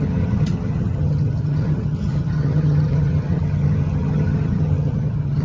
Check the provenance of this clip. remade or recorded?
remade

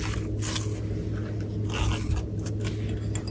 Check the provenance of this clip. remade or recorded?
recorded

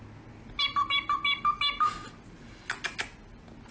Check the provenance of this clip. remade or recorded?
recorded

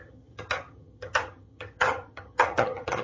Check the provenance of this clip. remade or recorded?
remade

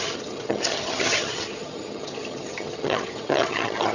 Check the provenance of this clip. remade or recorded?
remade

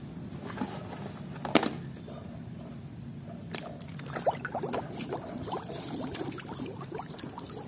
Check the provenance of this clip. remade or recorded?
recorded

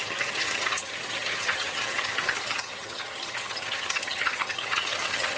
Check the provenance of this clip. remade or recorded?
remade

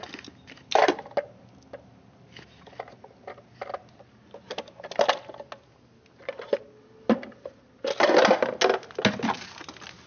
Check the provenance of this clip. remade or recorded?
recorded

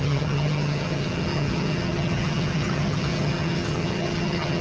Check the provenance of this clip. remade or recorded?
remade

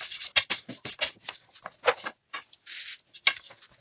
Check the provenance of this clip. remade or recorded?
recorded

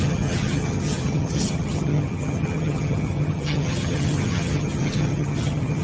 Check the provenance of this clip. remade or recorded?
remade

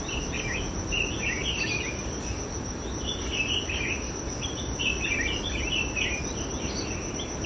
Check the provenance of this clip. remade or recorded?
recorded